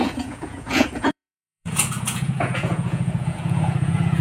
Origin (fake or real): fake